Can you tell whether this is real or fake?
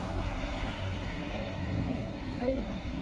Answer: fake